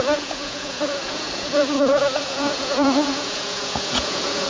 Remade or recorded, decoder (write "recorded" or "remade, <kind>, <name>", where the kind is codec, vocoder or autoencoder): remade, vocoder, Vocos